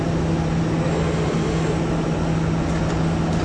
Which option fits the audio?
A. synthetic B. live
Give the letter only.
B